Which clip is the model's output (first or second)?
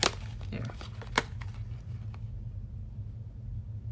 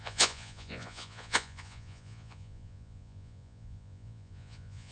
second